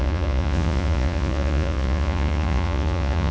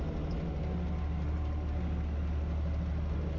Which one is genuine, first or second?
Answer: second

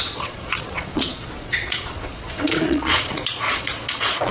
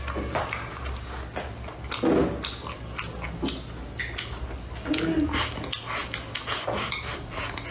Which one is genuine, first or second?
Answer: second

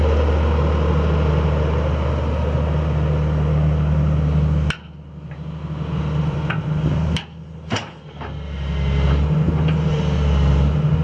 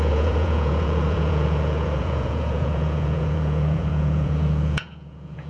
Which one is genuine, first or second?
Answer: first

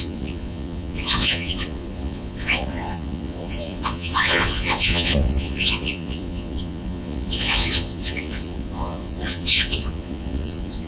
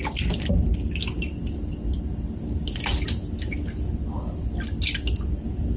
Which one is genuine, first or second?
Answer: second